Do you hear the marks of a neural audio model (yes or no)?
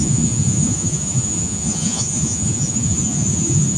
yes